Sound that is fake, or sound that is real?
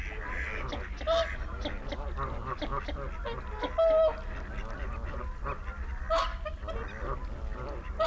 real